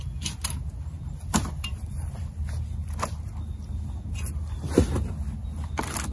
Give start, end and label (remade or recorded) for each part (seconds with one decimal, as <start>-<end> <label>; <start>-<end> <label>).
0.0-1.7 recorded; 1.7-2.2 remade; 2.2-6.1 recorded